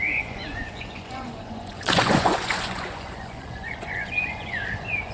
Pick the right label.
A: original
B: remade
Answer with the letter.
B